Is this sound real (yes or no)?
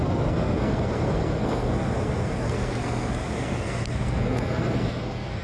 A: no